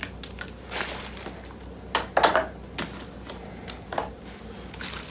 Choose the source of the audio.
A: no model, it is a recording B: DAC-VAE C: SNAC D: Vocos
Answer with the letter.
A